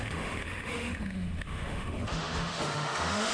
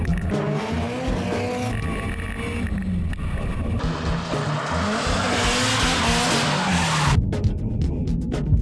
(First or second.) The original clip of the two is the second